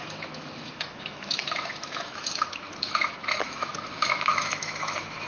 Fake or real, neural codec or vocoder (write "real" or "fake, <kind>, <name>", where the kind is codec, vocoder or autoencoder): fake, autoencoder, DAC-VAE